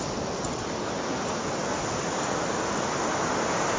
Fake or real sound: real